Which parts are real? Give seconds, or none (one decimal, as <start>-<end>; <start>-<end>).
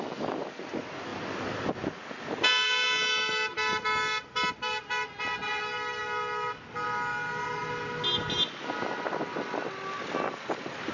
0.0-10.9